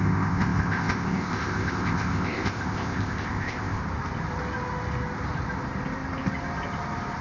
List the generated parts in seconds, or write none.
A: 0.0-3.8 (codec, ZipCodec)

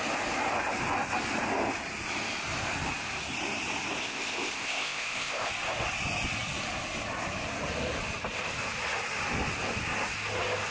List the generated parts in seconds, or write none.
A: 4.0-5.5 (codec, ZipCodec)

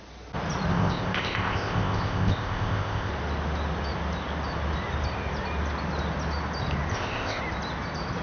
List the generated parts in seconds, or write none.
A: 0.7-3.1 (codec, ZipCodec); 6.9-7.4